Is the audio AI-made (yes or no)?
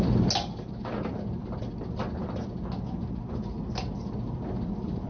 no